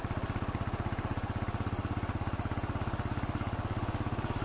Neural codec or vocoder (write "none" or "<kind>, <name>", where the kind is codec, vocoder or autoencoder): none